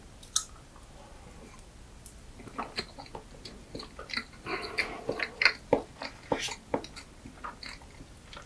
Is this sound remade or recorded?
recorded